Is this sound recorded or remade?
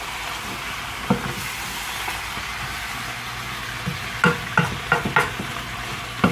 recorded